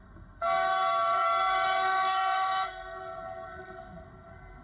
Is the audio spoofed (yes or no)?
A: yes